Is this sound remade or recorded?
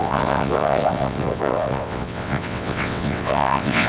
remade